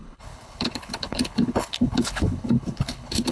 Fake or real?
fake